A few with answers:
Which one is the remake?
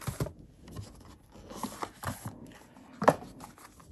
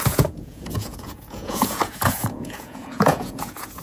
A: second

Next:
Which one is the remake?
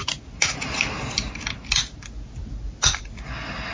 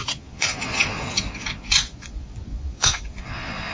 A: second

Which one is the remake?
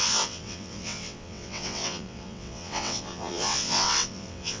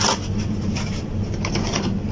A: first